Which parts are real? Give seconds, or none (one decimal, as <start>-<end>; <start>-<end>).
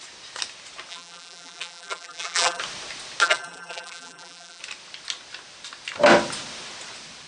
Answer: 0.0-0.9; 2.6-3.2; 4.6-7.3